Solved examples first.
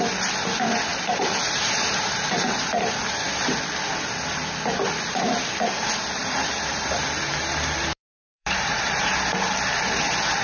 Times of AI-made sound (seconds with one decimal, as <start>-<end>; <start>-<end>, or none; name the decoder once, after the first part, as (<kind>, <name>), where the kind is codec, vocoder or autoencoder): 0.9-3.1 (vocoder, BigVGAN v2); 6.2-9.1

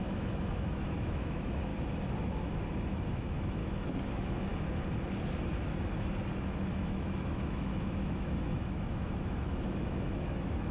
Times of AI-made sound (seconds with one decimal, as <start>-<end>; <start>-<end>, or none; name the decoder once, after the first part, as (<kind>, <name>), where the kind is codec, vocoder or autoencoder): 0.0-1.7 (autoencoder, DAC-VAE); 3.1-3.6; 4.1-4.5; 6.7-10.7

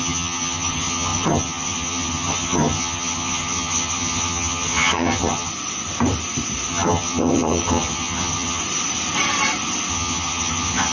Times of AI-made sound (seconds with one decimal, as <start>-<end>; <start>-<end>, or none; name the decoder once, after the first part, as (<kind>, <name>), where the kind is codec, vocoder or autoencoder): 0.0-5.5 (vocoder, HiFi-GAN); 6.7-8.6; 9.9-10.9

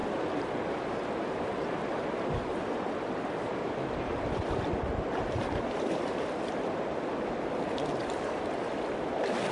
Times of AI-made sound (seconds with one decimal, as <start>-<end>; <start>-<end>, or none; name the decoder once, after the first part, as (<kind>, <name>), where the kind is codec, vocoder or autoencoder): none